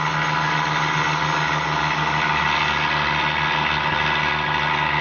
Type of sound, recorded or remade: recorded